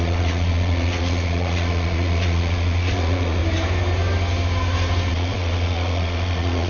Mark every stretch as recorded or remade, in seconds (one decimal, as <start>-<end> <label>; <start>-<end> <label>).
0.0-3.4 remade; 3.4-5.1 recorded; 5.1-6.7 remade